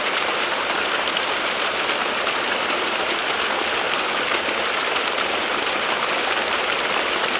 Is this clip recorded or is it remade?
recorded